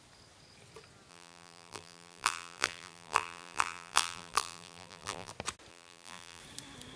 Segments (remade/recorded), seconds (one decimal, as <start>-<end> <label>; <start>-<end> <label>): 0.0-1.1 recorded; 1.1-5.3 remade; 5.3-5.7 recorded; 5.7-6.4 remade; 6.4-7.0 recorded